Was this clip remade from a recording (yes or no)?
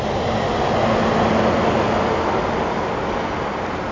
no